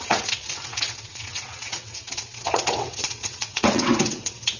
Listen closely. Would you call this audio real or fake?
fake